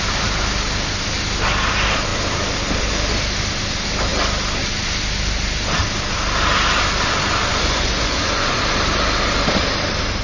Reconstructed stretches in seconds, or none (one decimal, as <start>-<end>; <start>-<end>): 7.5-8.6

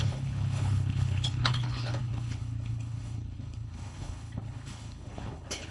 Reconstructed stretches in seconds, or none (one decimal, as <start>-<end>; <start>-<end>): 0.0-5.7

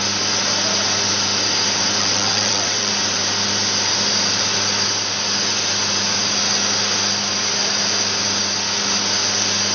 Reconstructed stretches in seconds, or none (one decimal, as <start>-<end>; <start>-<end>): 2.0-2.9

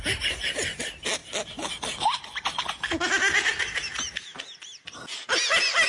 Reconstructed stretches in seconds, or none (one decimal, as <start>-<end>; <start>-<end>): none

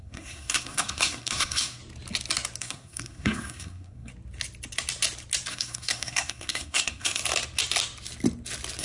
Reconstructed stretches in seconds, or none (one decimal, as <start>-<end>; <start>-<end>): 0.0-1.8; 2.6-4.1; 5.5-7.2

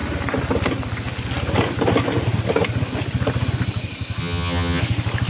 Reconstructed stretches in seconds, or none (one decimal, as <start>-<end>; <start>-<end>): 4.2-4.8